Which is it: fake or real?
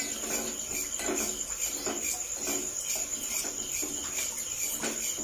real